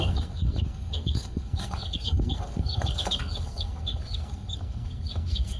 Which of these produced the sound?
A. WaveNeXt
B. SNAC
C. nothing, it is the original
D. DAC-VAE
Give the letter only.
B